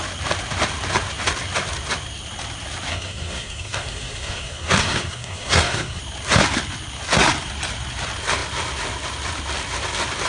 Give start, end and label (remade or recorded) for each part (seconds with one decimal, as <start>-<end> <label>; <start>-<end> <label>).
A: 0.0-2.9 recorded; 2.9-6.0 remade; 6.0-10.3 recorded

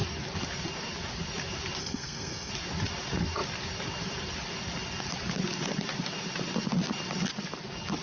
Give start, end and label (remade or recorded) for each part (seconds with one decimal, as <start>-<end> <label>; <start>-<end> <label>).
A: 0.0-1.8 recorded; 1.8-2.5 remade; 2.5-8.0 recorded

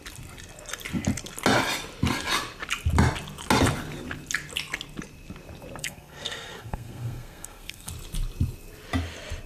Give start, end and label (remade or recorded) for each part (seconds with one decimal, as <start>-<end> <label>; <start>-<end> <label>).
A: 0.0-5.8 recorded; 5.8-7.9 remade; 7.9-9.5 recorded

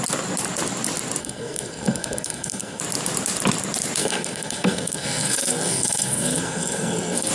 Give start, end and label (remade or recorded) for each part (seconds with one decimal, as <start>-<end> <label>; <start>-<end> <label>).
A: 0.0-1.2 recorded; 1.2-2.8 remade; 2.8-4.0 recorded; 4.0-7.3 remade